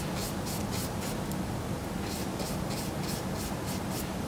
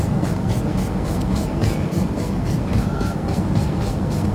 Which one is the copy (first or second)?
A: second